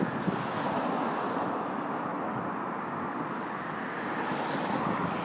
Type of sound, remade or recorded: recorded